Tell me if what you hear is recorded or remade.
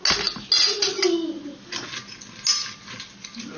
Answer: recorded